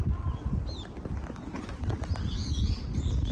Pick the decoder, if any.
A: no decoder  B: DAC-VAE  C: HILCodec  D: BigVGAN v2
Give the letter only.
A